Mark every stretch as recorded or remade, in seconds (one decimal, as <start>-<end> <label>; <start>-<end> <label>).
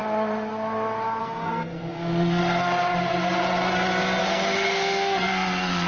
0.0-1.2 recorded; 1.2-2.4 remade; 2.4-4.2 recorded; 4.2-5.9 remade